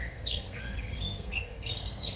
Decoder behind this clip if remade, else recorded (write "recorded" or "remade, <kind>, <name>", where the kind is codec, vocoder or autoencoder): remade, codec, SNAC